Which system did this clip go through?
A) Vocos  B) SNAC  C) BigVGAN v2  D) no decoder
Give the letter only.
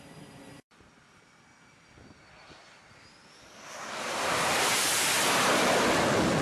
C